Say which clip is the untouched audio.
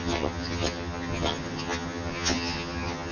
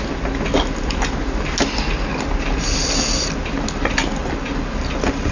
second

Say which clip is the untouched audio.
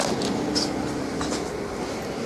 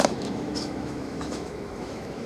first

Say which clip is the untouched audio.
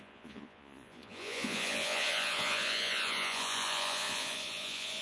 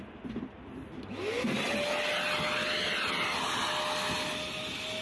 second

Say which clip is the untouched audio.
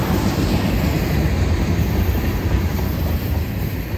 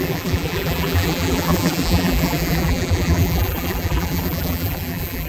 first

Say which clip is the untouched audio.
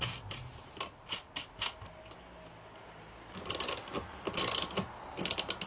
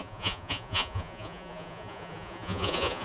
first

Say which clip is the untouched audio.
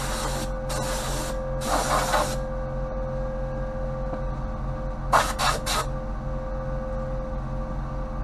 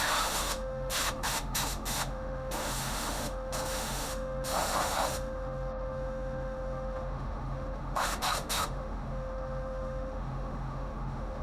first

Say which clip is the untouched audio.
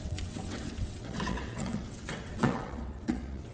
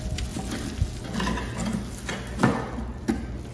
second